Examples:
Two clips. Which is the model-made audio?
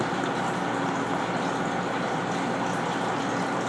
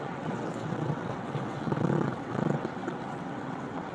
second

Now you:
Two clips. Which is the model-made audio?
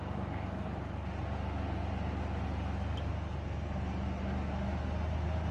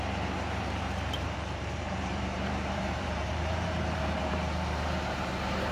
second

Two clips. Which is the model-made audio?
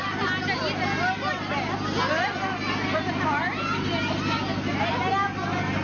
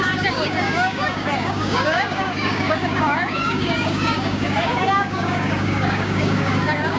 second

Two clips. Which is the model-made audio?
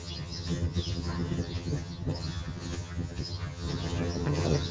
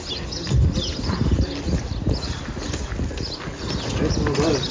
first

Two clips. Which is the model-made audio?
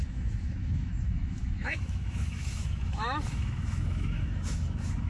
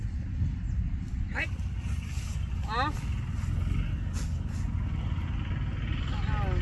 first